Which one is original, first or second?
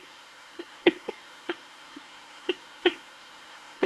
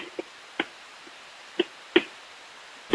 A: second